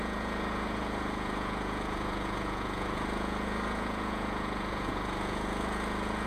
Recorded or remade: remade